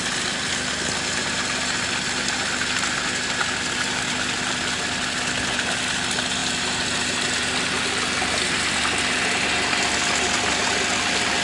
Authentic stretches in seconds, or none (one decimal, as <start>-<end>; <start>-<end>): 0.0-11.4